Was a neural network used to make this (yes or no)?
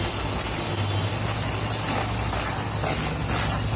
no